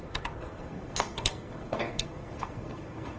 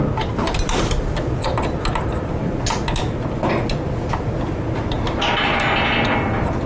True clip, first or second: second